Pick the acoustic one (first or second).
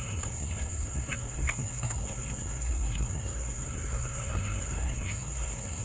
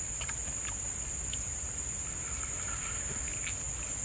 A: second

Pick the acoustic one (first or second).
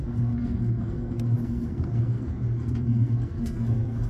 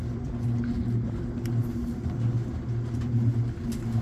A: second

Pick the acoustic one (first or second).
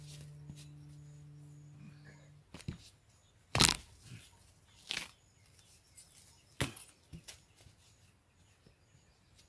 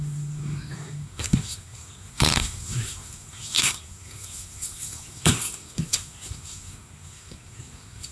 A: first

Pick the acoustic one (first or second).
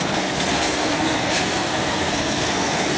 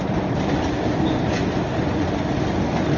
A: second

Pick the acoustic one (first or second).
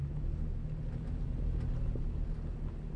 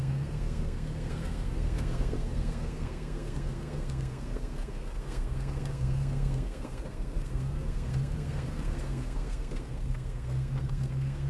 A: first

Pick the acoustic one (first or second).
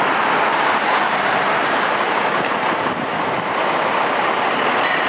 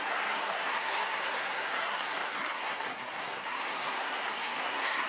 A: first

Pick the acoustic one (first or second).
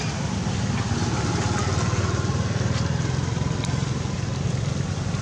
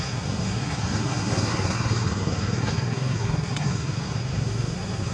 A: first